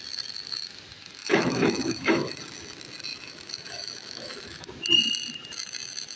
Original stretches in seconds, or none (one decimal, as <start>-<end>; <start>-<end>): 0.0-1.2; 2.4-3.1; 4.7-6.2